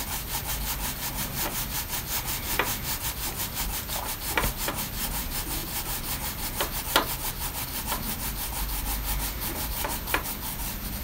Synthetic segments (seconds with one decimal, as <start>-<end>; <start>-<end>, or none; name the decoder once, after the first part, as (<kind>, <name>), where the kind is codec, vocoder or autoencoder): 5.6-6.8 (vocoder, BigVGAN v2)